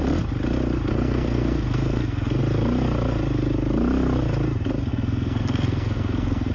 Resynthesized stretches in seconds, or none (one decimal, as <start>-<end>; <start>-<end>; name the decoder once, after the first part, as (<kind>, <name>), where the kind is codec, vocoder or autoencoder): 0.9-2.4 (codec, SNAC); 4.9-6.5